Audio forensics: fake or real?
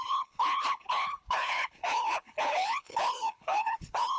fake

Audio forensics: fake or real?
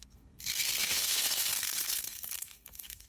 fake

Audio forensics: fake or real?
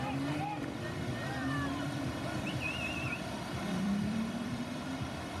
fake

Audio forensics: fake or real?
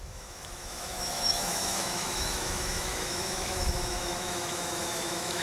fake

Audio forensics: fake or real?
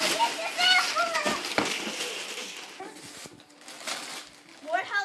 real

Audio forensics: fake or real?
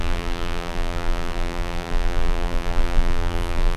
fake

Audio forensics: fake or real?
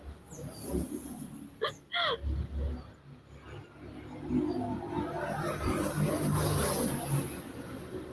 real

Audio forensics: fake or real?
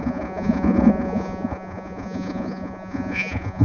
fake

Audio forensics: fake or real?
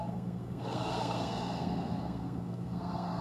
fake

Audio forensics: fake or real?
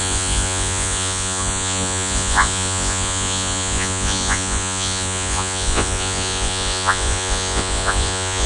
fake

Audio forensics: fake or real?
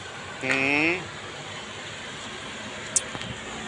real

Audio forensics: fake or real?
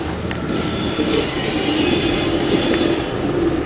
real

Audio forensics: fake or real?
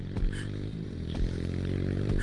fake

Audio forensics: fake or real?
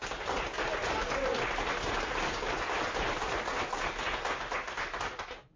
real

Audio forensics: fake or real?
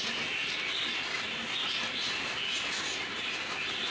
real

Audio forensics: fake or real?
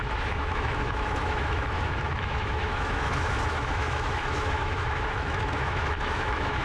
fake